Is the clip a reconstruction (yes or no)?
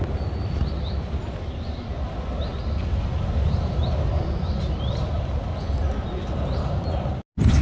no